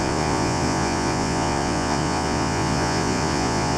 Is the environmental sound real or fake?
fake